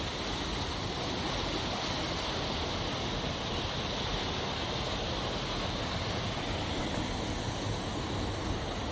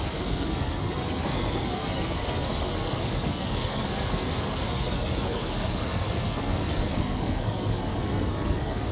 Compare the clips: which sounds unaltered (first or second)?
first